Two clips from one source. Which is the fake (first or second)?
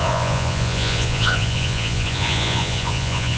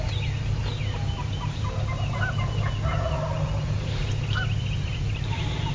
first